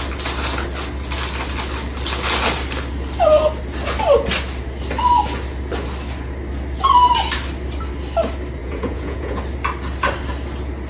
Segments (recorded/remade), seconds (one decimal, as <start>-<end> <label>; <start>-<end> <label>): 0.0-8.6 recorded; 8.6-9.4 remade; 9.4-10.9 recorded